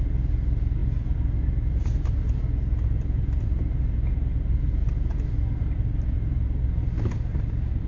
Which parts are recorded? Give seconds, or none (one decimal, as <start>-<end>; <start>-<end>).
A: 0.0-7.9